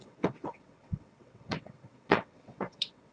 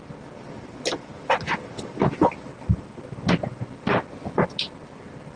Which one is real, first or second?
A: second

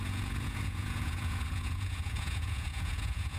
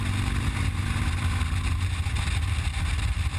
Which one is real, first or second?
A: second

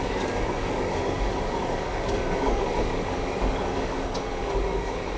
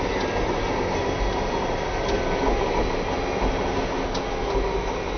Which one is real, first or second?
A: second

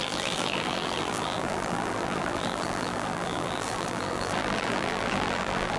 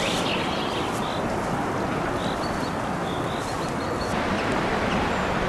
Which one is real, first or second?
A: second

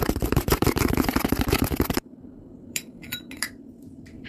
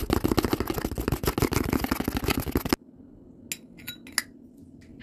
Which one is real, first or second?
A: second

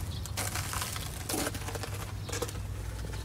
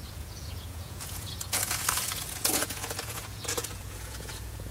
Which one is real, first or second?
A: first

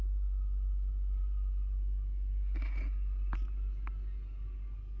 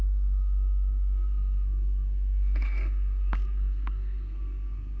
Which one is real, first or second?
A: first